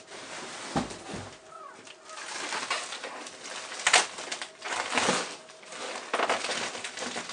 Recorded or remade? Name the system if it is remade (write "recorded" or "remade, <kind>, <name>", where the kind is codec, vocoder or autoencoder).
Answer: recorded